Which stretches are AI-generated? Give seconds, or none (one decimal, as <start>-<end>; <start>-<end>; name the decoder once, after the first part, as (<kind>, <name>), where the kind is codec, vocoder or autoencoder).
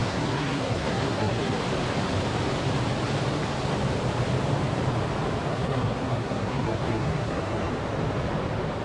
0.0-1.6 (codec, SNAC); 5.5-7.7